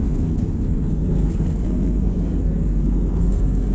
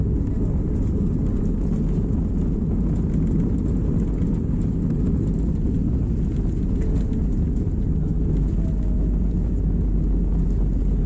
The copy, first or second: first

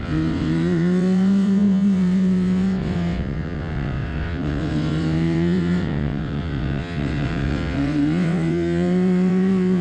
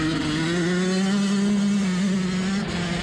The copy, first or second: first